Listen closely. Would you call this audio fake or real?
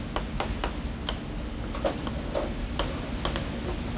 real